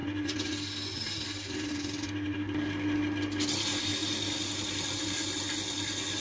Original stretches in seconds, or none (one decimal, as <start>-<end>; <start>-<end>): 0.0-6.2